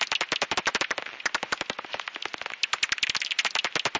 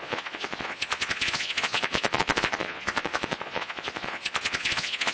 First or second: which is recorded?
first